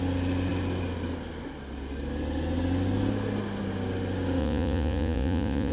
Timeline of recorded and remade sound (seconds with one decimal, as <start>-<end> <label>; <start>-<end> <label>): 0.0-4.4 recorded; 4.4-5.7 remade